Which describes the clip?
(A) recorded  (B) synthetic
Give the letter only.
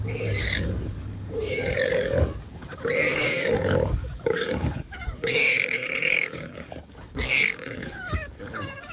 B